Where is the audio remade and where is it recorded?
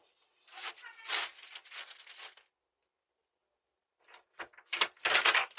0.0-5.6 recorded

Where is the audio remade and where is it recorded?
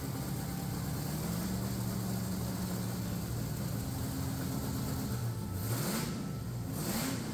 0.0-7.3 recorded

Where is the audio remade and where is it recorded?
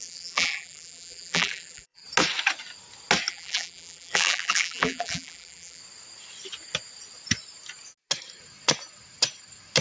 0.0-2.0 remade; 2.0-3.3 recorded; 3.3-5.8 remade; 5.8-9.8 recorded